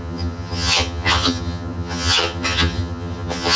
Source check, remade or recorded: remade